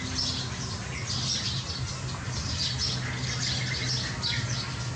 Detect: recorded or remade recorded